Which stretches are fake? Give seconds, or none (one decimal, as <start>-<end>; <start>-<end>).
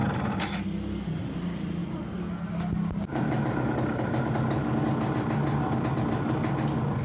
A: none